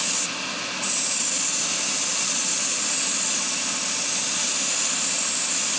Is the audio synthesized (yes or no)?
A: no